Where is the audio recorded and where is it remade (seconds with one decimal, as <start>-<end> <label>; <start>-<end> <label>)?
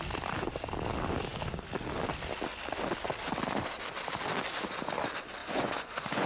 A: 0.0-5.4 recorded; 5.4-6.3 remade